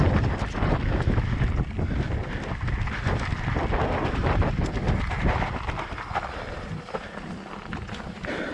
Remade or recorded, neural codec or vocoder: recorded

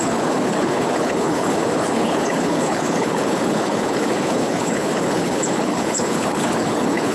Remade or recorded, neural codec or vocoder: remade, codec, HILCodec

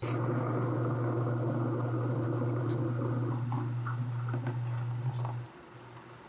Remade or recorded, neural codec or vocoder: recorded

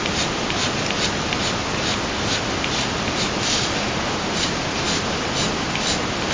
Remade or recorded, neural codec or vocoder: recorded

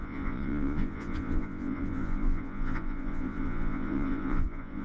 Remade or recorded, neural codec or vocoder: remade, vocoder, Vocos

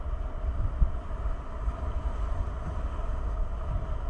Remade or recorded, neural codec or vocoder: recorded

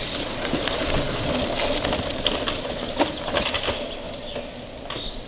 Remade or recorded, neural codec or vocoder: recorded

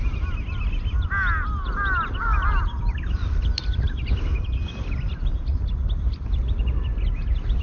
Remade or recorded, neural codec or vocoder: recorded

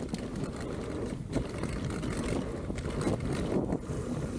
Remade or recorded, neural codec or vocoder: recorded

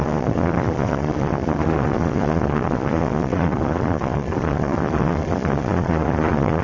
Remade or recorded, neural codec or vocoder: remade, vocoder, Vocos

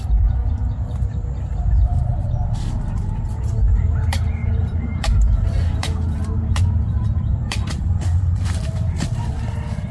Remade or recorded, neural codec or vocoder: remade, vocoder, BigVGAN v2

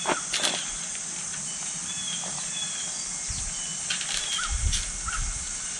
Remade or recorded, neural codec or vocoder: recorded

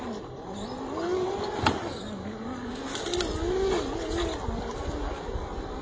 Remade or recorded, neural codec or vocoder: recorded